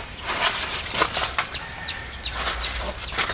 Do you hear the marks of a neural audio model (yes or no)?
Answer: yes